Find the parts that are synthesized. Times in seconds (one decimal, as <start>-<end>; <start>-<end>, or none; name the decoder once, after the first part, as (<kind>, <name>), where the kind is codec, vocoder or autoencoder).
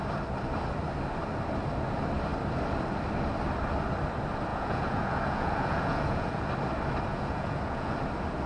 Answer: 4.5-6.5 (vocoder, Vocos); 7.1-7.9